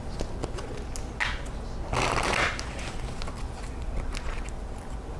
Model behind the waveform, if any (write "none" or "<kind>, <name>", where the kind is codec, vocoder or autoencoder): none